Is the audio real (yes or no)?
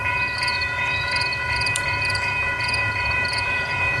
no